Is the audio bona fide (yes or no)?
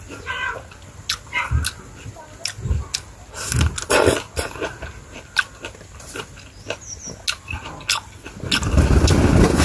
yes